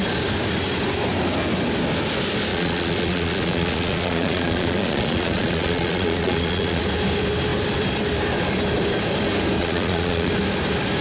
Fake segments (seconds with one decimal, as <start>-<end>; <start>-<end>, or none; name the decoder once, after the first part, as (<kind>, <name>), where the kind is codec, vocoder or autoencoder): 2.5-6.8 (vocoder, Vocos); 9.6-10.3